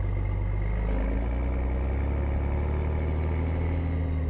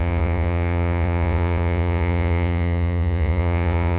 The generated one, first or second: second